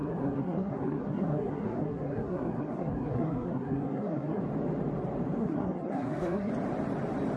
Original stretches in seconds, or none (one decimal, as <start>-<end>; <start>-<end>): 4.4-5.4; 6.5-7.4